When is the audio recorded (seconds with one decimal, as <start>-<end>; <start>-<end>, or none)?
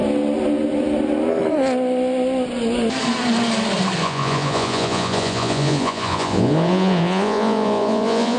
0.0-4.0